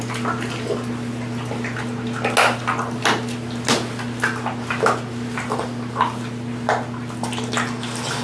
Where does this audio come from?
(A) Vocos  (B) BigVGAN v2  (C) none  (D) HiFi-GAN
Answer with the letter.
C